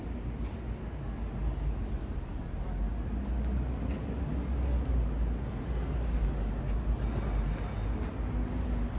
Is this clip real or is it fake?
real